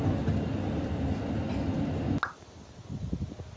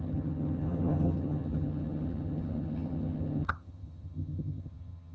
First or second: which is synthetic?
second